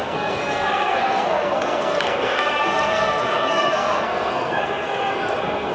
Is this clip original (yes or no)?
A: no